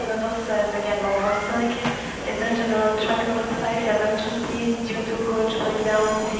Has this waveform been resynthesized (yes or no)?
no